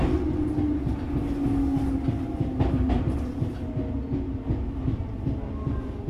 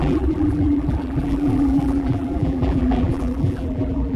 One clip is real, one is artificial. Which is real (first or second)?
first